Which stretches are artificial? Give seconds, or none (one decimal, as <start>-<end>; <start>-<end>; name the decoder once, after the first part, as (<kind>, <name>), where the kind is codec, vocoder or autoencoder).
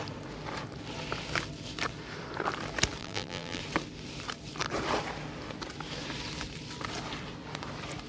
3.0-3.6 (vocoder, BigVGAN v2)